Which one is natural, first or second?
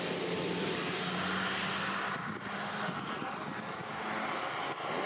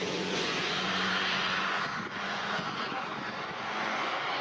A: first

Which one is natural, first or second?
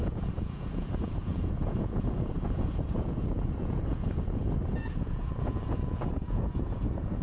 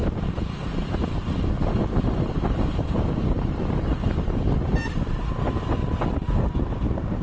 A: second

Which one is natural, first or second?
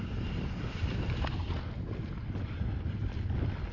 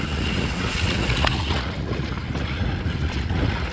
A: first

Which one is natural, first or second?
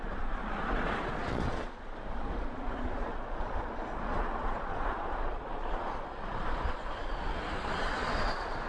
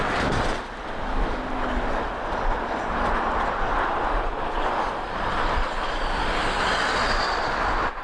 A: second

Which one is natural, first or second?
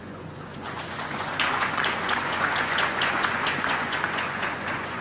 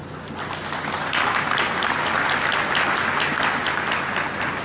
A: second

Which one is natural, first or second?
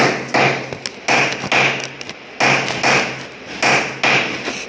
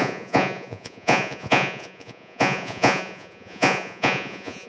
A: first